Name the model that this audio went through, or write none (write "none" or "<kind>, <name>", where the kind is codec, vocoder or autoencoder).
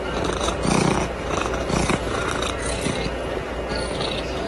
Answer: none